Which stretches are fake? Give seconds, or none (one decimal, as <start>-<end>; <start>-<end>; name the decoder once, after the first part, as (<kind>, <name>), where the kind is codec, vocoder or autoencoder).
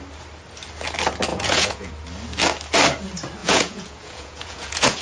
1.3-1.9 (vocoder, Vocos); 3.4-5.0